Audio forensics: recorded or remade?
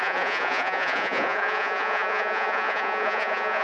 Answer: remade